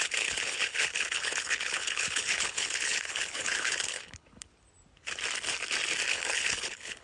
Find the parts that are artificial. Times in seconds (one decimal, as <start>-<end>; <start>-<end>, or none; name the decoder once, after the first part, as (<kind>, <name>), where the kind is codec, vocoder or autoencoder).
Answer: 0.0-4.5 (codec, HILCodec); 6.1-7.0